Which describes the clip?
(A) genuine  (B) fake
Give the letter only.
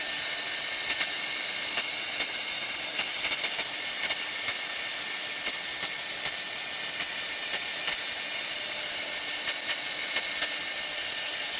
A